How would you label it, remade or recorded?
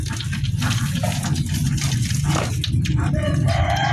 recorded